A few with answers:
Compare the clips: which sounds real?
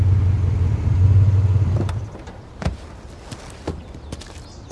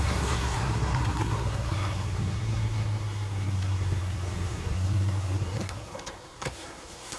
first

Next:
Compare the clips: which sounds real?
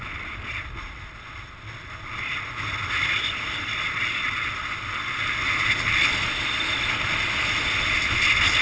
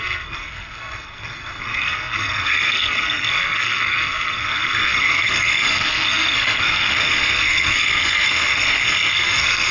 first